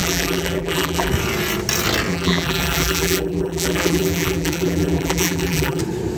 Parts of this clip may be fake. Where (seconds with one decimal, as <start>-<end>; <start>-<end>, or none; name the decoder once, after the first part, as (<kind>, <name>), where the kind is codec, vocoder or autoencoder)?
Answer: 0.0-1.1 (vocoder, BigVGAN v2); 2.1-5.8